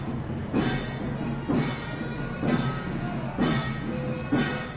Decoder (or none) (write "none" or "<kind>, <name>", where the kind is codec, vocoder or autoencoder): none